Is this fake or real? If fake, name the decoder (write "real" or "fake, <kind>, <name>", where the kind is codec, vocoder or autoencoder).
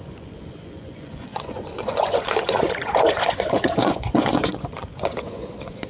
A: fake, vocoder, Vocos